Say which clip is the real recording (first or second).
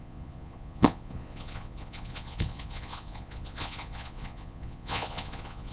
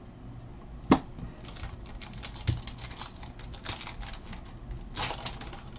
second